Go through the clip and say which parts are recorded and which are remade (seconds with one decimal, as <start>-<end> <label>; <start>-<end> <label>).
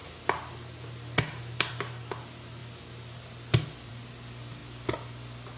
0.0-5.6 recorded